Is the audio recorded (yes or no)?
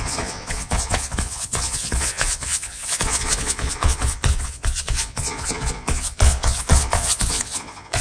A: no